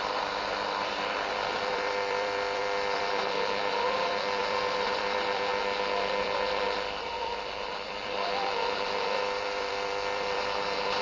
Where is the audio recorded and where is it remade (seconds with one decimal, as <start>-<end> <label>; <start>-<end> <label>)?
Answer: 0.0-5.5 remade; 5.5-6.2 recorded; 6.2-11.0 remade